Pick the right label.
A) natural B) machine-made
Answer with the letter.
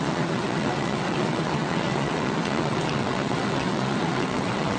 B